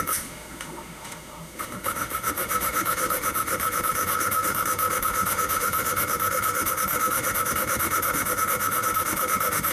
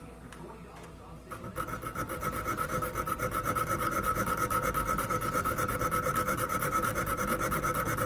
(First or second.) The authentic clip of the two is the second